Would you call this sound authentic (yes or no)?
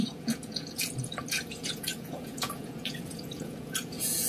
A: no